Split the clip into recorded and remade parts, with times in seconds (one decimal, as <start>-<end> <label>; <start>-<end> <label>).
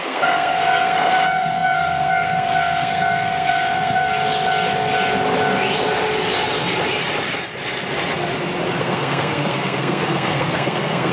0.0-4.1 remade; 4.1-8.8 recorded; 8.8-11.1 remade